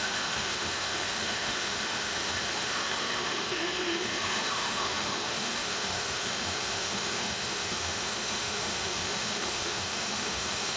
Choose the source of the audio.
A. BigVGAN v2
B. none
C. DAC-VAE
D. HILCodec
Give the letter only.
C